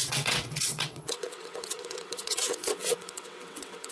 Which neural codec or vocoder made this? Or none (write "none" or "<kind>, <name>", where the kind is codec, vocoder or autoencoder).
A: vocoder, WaveNeXt